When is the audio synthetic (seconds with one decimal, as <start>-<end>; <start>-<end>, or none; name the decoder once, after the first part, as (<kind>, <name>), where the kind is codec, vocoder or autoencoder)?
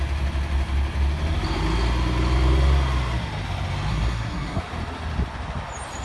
3.9-4.6 (codec, SNAC)